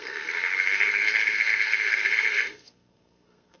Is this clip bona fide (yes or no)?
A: no